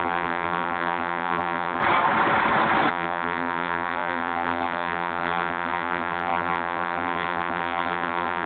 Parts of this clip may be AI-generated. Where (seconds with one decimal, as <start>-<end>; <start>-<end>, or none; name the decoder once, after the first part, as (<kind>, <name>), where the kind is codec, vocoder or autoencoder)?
0.0-1.8 (vocoder, BigVGAN v2); 2.9-8.5